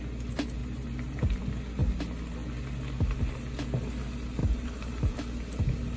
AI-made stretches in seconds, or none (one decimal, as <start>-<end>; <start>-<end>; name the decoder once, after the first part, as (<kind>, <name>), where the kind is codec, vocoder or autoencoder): 0.6-1.4 (vocoder, BigVGAN v2); 4.4-5.1